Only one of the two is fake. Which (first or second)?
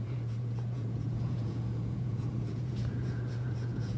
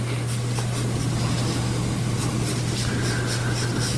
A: first